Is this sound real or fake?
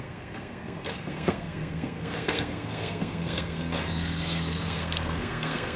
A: fake